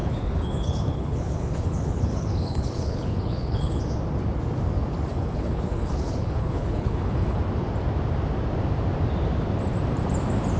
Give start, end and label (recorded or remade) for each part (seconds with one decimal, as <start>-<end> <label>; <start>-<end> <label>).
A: 0.0-3.8 remade; 3.8-5.1 recorded; 5.1-7.4 remade; 7.4-10.6 recorded